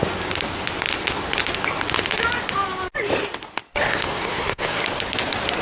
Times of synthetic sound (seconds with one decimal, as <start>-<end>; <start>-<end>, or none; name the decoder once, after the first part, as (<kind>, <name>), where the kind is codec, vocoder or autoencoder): 3.8-4.8 (codec, SNAC)